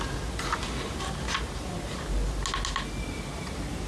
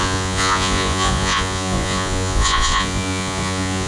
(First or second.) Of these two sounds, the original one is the first